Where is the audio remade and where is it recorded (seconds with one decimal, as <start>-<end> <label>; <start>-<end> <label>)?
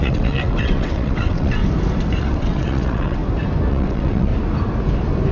0.0-1.6 remade; 1.6-2.2 recorded; 2.2-3.2 remade; 3.2-3.7 recorded; 3.7-4.3 remade; 4.3-5.3 recorded